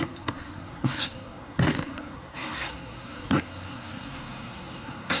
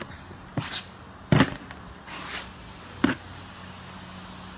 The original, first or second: second